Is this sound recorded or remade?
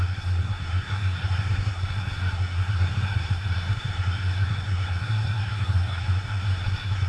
remade